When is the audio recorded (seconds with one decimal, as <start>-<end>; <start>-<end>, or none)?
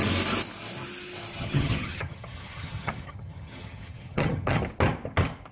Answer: 0.0-1.3; 4.6-5.5